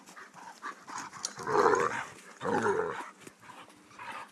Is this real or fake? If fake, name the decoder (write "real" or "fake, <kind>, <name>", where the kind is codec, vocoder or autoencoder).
real